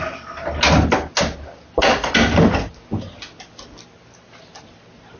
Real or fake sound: real